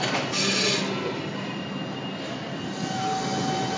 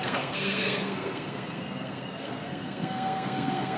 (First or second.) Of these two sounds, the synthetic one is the second